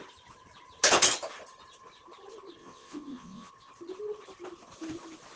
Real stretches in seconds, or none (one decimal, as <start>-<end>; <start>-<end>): 0.0-2.6; 3.5-5.4